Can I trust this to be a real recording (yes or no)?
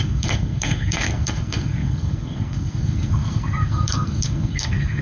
no